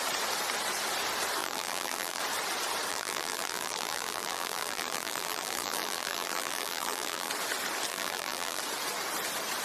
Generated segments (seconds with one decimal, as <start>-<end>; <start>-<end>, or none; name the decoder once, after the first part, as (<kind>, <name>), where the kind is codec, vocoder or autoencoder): 1.4-2.2 (vocoder, BigVGAN v2); 2.9-7.3; 7.9-8.6